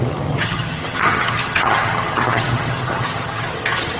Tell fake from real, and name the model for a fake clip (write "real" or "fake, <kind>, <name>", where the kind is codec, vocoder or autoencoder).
fake, vocoder, HiFi-GAN